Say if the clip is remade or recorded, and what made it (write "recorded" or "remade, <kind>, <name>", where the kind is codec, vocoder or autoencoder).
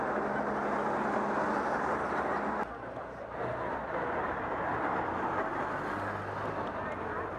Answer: recorded